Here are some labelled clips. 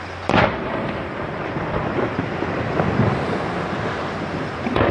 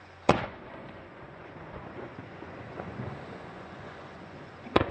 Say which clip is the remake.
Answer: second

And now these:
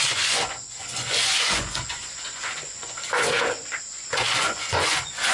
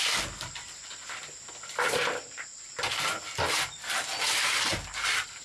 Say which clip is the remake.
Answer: first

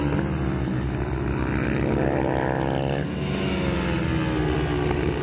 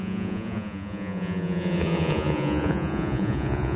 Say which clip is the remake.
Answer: second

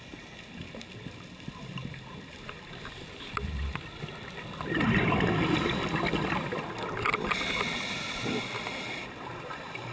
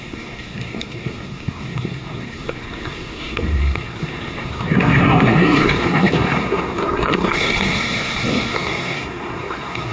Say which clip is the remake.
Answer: second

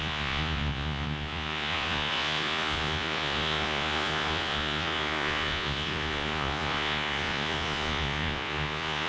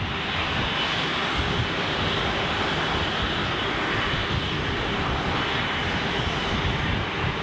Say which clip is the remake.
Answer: first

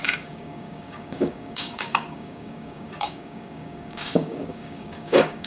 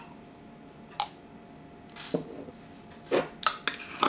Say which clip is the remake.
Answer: first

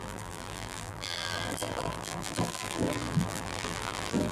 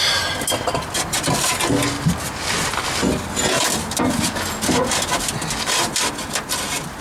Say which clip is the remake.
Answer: first